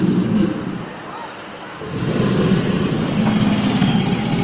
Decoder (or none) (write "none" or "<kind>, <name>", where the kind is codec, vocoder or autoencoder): none